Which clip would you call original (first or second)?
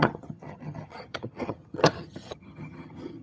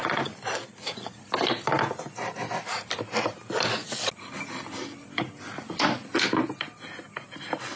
second